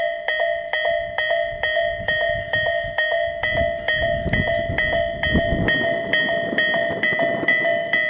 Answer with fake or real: real